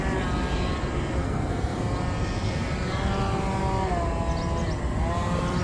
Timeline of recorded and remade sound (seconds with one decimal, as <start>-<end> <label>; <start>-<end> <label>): 0.0-1.2 recorded; 1.2-1.8 remade; 1.8-5.6 recorded